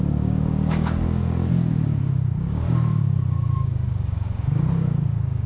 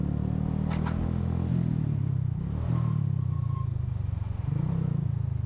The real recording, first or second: second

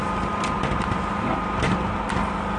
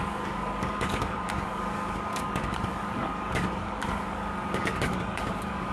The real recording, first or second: first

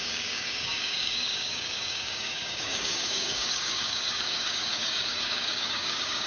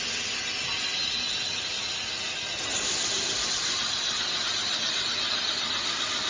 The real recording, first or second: second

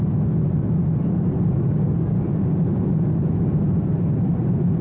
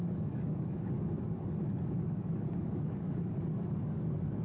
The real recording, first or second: first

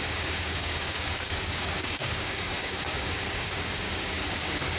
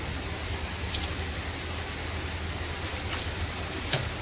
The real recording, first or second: second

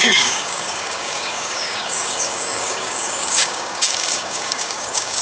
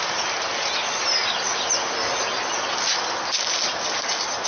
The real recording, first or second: second